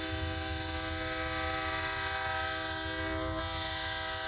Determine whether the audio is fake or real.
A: real